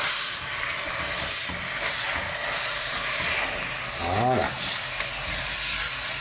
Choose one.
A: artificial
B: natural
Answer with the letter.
B